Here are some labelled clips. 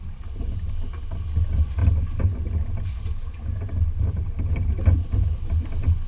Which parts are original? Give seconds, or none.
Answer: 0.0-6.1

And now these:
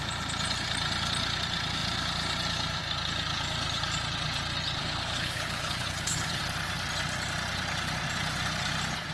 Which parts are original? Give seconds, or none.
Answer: 0.0-4.8; 6.4-9.1

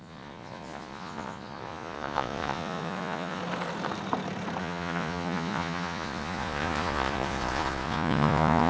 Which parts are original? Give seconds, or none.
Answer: 3.4-4.6

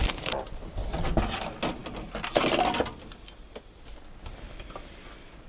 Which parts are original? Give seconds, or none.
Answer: 0.0-5.5